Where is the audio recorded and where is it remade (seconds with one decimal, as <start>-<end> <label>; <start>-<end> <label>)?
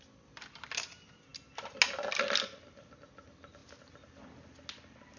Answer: 0.0-5.2 recorded